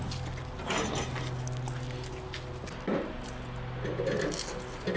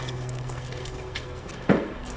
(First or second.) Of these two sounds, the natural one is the first